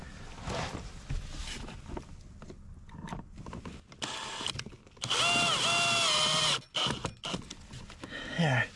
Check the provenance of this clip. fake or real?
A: real